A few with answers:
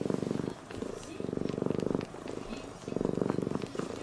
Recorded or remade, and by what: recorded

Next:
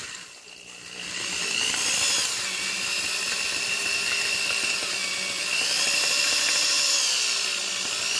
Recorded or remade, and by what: recorded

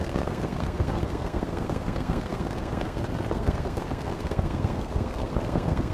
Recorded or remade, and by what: remade, codec, SNAC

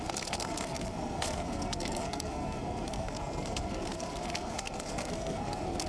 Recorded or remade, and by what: remade, codec, SNAC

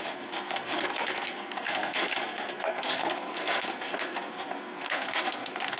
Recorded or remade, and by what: remade, codec, SNAC